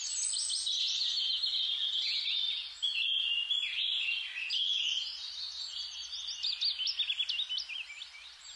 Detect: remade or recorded recorded